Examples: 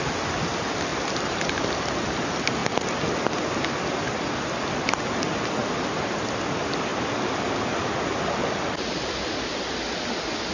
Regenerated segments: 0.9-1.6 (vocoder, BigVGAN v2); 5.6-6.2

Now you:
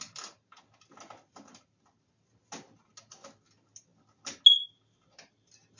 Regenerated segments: none

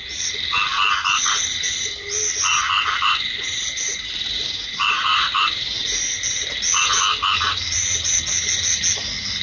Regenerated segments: 2.5-6.3 (vocoder, BigVGAN v2)

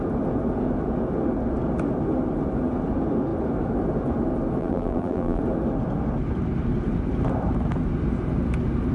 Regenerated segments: 4.6-5.4 (vocoder, BigVGAN v2)

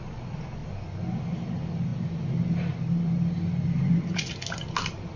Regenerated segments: none

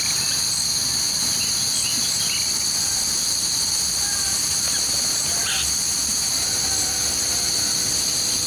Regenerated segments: none

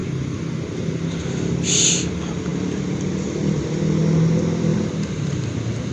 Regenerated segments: 2.5-4.0 (vocoder, BigVGAN v2); 4.7-5.5